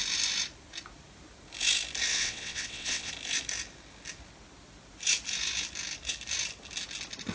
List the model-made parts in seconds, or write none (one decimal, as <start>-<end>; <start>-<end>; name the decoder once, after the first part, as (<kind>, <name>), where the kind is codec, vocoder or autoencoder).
2.1-3.1 (vocoder, WaveNeXt)